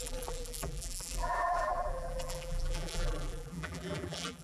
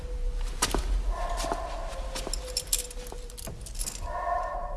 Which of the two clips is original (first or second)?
second